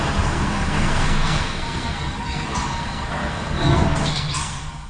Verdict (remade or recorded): remade